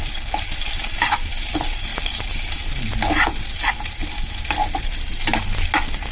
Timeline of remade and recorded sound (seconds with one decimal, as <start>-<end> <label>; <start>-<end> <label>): 0.0-6.1 recorded